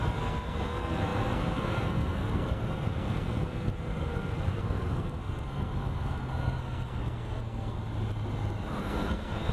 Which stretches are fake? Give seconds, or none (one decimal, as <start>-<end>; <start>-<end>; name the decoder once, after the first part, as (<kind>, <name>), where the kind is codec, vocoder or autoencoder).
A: 0.0-7.8 (codec, SNAC); 8.8-9.5

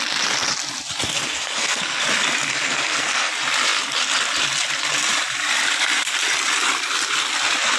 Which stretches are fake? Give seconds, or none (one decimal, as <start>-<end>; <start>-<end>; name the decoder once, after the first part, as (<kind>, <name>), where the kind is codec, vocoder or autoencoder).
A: 1.1-2.0 (codec, SNAC); 2.5-3.3